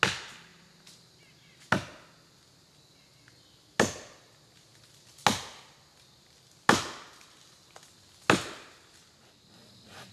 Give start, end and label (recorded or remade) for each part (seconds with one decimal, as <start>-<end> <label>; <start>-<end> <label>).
0.0-10.1 recorded